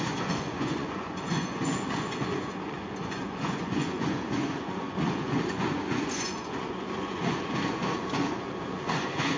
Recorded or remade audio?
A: remade